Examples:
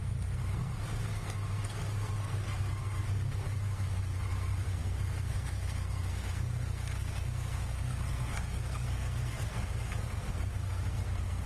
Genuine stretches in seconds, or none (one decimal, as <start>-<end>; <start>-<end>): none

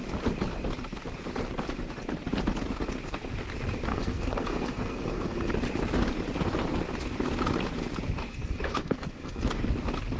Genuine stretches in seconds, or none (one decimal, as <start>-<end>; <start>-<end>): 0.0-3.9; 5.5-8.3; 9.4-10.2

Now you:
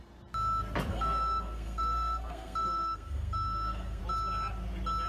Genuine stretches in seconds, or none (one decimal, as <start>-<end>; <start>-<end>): 0.0-0.9; 4.0-5.1

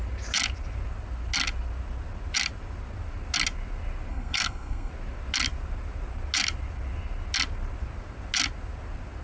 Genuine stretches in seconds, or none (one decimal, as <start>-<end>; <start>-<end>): 0.0-4.1; 4.9-9.2

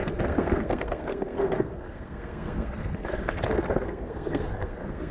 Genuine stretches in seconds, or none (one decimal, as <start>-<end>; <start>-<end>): none